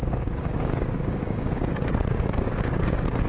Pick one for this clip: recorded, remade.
remade